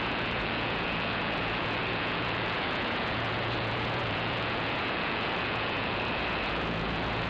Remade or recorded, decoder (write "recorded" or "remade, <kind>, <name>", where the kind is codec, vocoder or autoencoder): remade, vocoder, Vocos